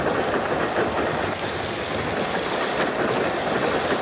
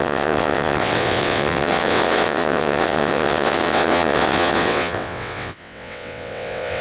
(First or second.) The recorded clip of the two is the first